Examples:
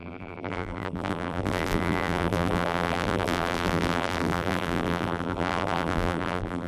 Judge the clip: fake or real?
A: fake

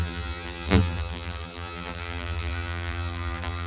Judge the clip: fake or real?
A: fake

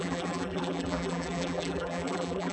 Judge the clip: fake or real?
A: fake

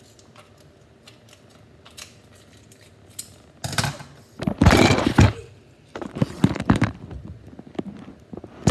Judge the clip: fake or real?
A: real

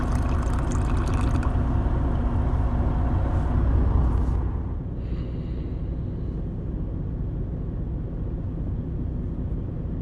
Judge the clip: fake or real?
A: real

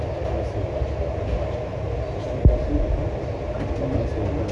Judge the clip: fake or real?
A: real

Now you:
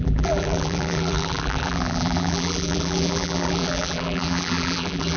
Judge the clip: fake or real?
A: fake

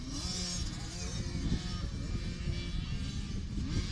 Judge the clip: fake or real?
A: real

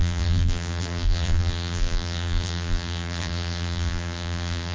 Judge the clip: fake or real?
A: fake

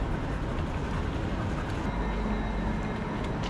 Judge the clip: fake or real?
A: real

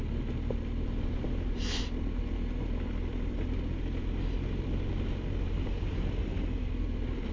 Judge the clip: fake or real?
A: real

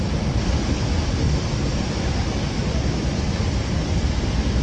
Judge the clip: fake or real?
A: real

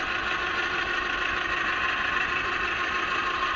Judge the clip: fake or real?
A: real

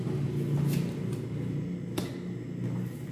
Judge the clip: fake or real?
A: real